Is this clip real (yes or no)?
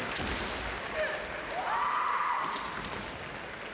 yes